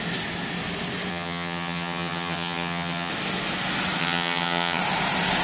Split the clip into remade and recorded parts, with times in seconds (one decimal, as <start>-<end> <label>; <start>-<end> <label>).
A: 0.0-1.1 recorded; 1.1-3.1 remade; 3.1-4.0 recorded; 4.0-4.8 remade; 4.8-5.4 recorded